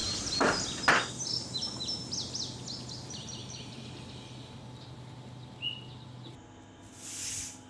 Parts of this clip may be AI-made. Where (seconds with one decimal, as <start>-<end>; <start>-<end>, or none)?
3.4-3.9